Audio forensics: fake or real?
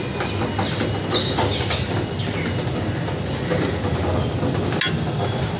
real